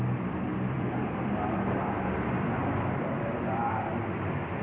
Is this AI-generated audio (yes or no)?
yes